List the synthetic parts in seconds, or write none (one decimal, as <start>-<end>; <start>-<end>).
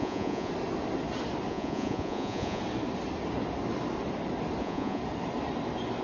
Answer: 0.0-0.5; 1.5-2.6; 4.6-5.0